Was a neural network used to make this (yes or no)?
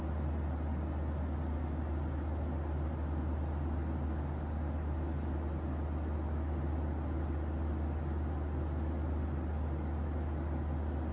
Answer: no